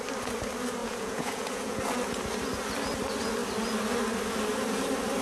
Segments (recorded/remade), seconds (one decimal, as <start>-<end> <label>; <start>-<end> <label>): 0.0-0.8 recorded; 0.8-1.8 remade; 1.8-5.2 recorded

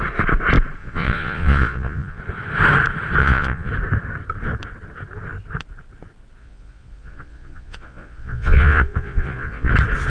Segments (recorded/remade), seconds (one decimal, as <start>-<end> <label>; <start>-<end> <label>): 0.0-0.8 recorded; 0.8-2.2 remade; 2.2-3.2 recorded; 3.2-3.7 remade; 3.7-6.4 recorded; 6.4-9.7 remade; 9.7-10.1 recorded

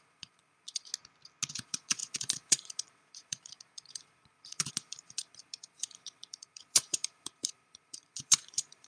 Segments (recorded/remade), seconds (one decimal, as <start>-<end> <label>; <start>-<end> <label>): 0.0-0.9 remade; 0.9-1.5 recorded; 1.5-8.9 remade

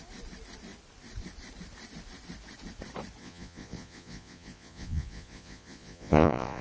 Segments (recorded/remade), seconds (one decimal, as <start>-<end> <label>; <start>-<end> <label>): 0.0-3.2 recorded; 3.2-6.6 remade

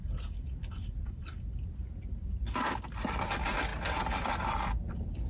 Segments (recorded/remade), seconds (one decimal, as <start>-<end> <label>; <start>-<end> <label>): 0.0-5.3 recorded

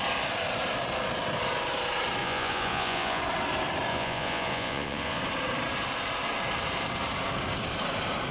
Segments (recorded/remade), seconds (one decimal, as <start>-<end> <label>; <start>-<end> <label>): 0.0-2.2 recorded; 2.2-3.2 remade; 3.2-3.9 recorded; 3.9-5.2 remade; 5.2-8.3 recorded

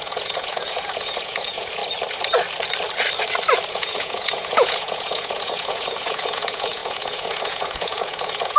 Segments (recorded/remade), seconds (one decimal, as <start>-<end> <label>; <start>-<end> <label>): 0.0-1.8 remade; 1.8-3.7 recorded; 3.7-8.6 remade